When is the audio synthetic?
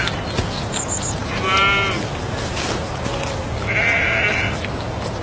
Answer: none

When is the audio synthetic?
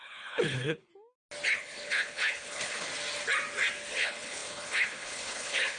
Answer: 0.0-0.9; 1.5-2.9; 3.9-5.8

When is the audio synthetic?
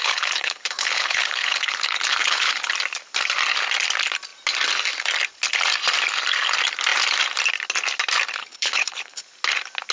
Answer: 0.0-2.7; 8.4-9.2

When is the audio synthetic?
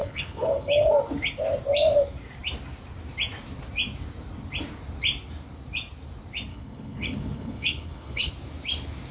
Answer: 0.0-0.9; 6.5-8.3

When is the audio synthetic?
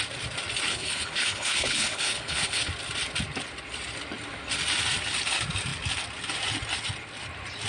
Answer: 0.7-2.7